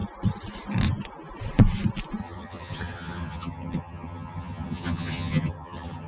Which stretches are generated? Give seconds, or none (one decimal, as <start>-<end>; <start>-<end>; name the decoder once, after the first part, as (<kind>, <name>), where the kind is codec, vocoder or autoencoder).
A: 2.2-6.1 (vocoder, HiFi-GAN)